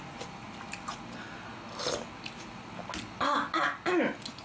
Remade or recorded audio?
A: recorded